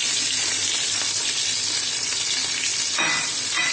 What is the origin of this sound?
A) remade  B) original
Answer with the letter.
B